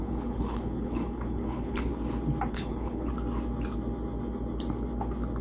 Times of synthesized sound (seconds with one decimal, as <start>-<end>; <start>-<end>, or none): 0.0-1.9; 2.5-3.1